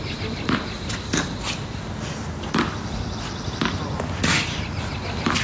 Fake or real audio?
real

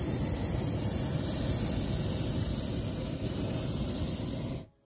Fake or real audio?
real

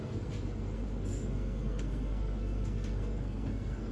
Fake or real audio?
fake